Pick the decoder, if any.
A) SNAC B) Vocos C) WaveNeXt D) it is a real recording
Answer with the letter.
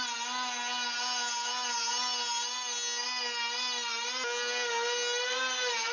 D